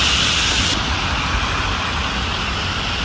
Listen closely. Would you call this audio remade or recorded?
recorded